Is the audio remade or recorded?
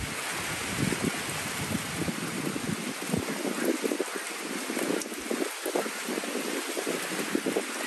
recorded